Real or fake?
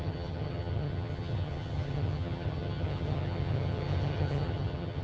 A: fake